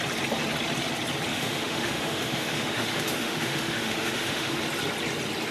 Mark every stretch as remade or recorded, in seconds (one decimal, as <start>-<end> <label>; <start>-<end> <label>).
0.0-1.3 recorded; 1.3-4.6 remade; 4.6-5.5 recorded